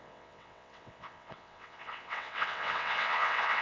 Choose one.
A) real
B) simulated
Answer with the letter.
B